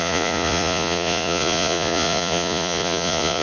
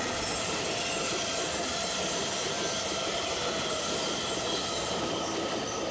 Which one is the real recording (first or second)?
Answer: second